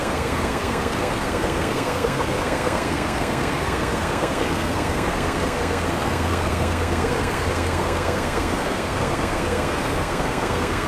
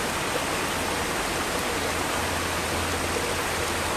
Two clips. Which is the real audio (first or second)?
second